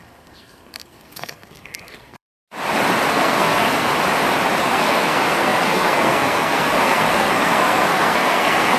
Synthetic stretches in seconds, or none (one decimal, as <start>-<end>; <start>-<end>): 0.0-2.3; 3.1-3.9; 4.6-8.8